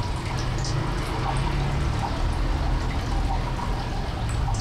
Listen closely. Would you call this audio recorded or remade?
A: recorded